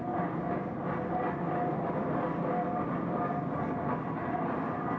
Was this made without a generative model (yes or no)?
yes